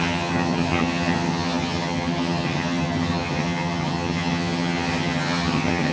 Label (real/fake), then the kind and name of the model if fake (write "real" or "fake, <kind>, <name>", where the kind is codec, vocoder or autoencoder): fake, vocoder, HiFi-GAN